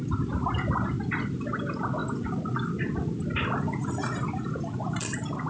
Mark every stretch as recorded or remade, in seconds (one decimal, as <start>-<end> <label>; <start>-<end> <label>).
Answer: 0.0-5.5 recorded